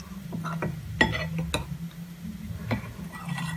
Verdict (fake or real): real